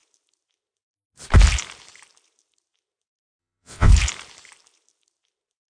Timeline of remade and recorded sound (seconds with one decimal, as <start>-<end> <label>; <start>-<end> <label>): 0.0-3.4 recorded; 3.4-3.9 remade; 3.9-5.7 recorded